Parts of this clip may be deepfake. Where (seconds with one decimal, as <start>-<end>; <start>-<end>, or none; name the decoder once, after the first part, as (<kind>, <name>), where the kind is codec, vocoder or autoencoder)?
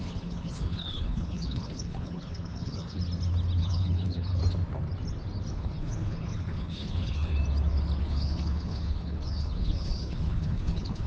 0.0-3.0 (codec, HILCodec); 3.6-4.4; 5.5-7.3; 8.0-11.1